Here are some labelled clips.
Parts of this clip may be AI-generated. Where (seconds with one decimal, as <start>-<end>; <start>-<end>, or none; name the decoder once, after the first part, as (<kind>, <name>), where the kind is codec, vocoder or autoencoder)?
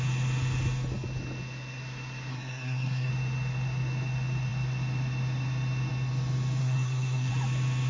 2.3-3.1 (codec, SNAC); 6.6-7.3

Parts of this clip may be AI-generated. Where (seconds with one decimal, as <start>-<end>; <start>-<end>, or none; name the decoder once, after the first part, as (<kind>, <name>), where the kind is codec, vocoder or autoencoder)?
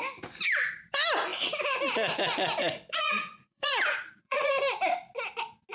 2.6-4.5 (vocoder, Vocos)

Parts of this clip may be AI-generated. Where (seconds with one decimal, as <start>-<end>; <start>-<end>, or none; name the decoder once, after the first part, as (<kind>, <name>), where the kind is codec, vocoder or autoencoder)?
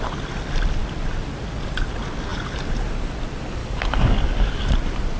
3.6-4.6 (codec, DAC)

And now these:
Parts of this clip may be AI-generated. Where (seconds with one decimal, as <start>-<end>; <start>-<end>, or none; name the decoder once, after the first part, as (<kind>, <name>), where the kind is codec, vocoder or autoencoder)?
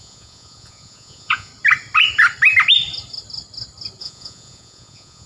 0.0-1.5 (vocoder, Vocos); 4.0-5.3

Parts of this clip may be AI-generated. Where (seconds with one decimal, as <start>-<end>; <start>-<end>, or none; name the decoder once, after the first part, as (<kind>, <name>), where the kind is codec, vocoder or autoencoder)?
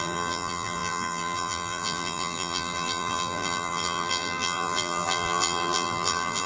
0.0-6.5 (vocoder, BigVGAN v2)